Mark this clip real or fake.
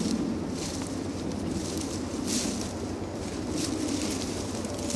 real